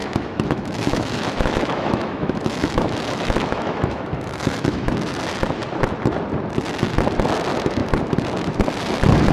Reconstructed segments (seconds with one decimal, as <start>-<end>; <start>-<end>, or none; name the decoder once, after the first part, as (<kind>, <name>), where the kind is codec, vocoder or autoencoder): 0.0-4.9 (autoencoder, DAC-VAE)